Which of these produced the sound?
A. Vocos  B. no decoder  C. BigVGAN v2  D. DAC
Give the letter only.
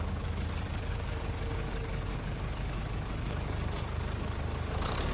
D